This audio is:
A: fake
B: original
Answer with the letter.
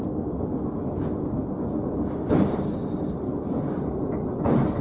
B